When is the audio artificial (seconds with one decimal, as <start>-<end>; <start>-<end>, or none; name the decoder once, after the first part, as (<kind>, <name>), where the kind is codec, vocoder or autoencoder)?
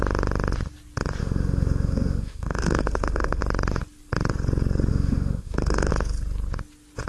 1.2-3.4 (autoencoder, DAC-VAE); 4.9-5.9